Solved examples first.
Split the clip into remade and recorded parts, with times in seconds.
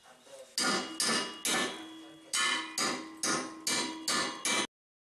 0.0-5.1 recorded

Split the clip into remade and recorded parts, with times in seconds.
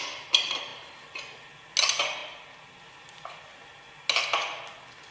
0.0-5.1 recorded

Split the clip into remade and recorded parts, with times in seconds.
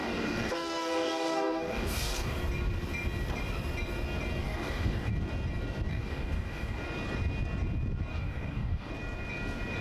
0.0-2.4 remade; 2.4-4.4 recorded; 4.4-5.1 remade; 5.1-5.9 recorded; 5.9-6.8 remade; 6.8-8.1 recorded; 8.1-8.9 remade; 8.9-9.8 recorded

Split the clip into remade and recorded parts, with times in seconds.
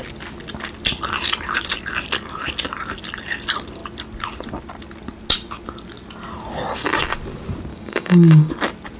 0.0-7.7 recorded; 7.7-8.5 remade; 8.5-9.0 recorded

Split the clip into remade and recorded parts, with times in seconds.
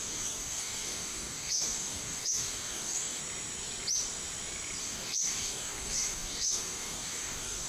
0.0-3.2 remade; 3.2-4.8 recorded; 4.8-7.7 remade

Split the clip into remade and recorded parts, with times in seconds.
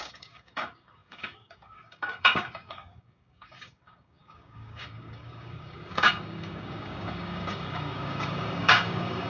0.0-9.3 remade